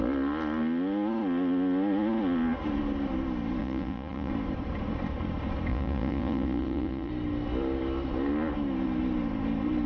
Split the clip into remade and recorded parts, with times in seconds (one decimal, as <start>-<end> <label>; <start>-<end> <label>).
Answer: 0.0-3.6 recorded; 3.6-4.3 remade; 4.3-5.7 recorded; 5.7-7.1 remade; 7.1-9.9 recorded